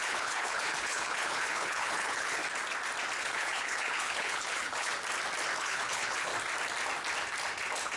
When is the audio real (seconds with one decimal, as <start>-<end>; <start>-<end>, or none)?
2.4-3.2; 4.9-5.6; 6.3-8.0